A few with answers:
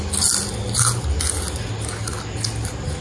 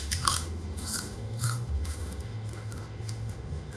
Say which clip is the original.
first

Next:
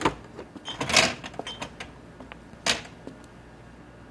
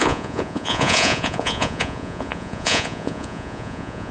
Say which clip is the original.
first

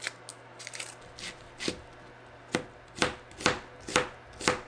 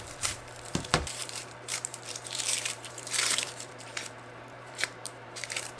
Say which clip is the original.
first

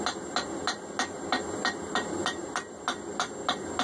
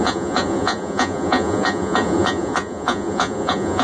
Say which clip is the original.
first